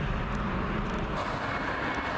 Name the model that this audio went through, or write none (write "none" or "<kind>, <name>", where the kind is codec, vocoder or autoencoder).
none